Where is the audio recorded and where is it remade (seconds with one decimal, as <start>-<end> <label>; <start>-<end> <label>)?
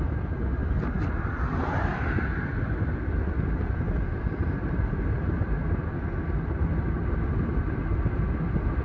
0.0-8.8 recorded